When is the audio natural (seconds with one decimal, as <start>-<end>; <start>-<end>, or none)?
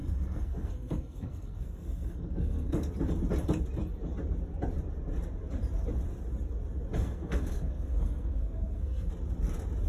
2.9-7.0; 9.1-9.9